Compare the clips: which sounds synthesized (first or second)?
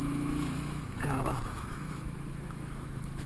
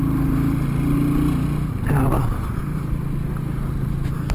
first